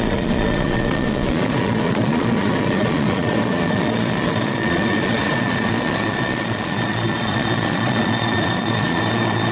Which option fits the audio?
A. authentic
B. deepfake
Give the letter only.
B